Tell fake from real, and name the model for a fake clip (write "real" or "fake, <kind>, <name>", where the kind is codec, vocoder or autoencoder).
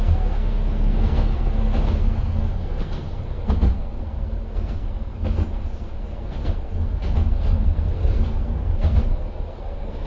fake, codec, SNAC